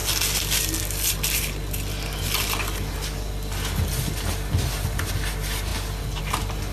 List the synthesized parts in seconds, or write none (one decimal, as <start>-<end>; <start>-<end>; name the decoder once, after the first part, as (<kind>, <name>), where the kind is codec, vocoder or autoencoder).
none